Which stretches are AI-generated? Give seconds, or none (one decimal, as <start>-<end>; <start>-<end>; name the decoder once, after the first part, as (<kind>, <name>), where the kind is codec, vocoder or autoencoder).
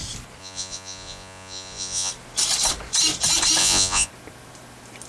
0.4-2.1 (vocoder, Vocos); 3.6-4.1